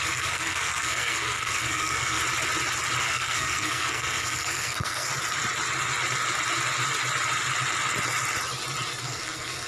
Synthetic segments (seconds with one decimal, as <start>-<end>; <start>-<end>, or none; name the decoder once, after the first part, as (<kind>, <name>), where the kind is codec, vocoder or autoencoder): 0.0-2.2 (codec, SNAC); 3.0-5.1; 9.0-9.7